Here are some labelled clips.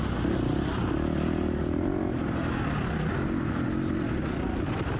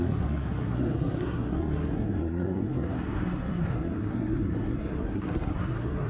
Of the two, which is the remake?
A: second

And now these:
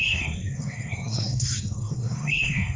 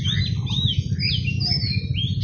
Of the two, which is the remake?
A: first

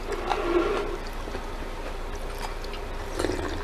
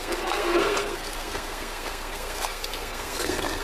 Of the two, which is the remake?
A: second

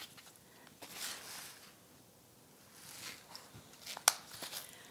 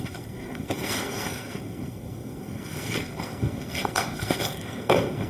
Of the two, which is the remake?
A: second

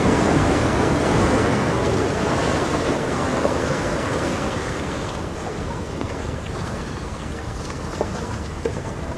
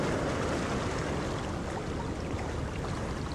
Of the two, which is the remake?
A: first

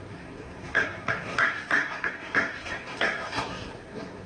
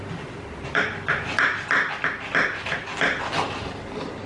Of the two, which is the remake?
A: first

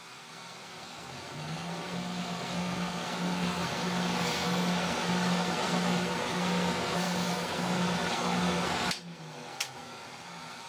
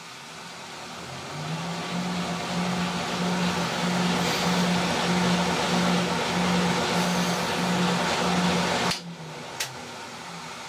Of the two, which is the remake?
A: first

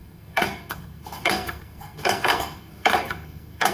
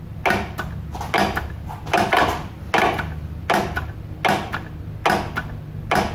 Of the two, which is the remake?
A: first